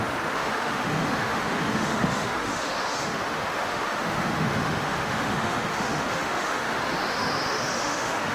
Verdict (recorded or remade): remade